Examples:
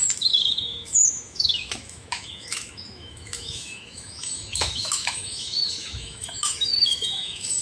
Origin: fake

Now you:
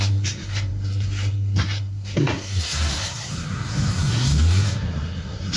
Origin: fake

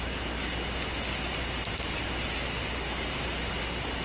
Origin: real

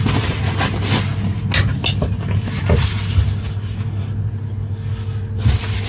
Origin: real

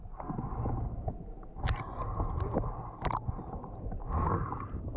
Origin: real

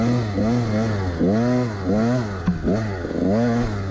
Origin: real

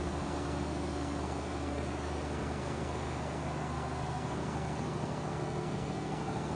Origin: fake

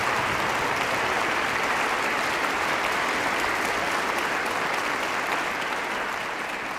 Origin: real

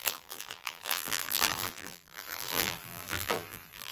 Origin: fake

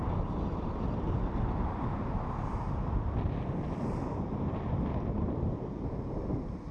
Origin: real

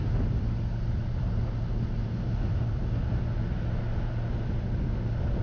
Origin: real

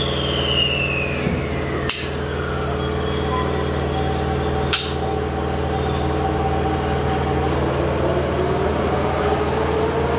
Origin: real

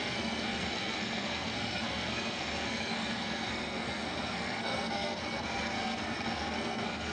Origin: fake